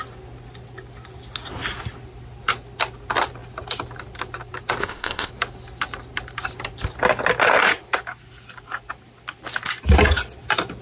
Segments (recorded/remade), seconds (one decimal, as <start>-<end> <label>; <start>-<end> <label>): 0.0-4.8 recorded; 4.8-5.3 remade; 5.3-10.8 recorded